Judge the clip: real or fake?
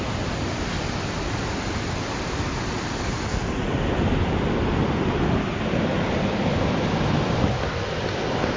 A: real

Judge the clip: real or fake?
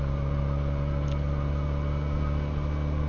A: real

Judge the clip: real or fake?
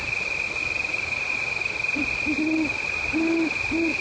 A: real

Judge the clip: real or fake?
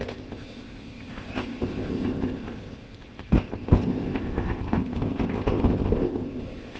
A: fake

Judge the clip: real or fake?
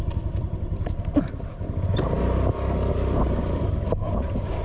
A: real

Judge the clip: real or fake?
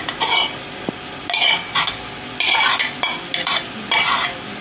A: real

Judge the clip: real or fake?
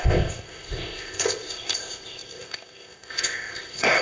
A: fake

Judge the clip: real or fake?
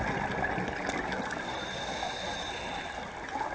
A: real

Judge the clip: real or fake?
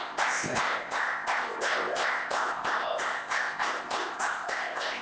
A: fake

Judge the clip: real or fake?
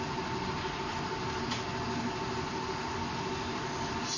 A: real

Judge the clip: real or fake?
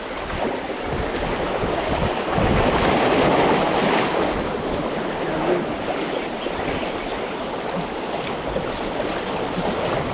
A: real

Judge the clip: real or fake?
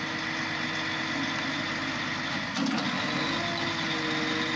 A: real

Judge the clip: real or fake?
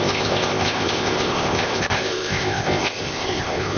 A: fake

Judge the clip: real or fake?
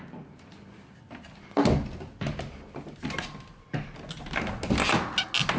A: real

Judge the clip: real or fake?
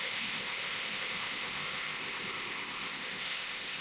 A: fake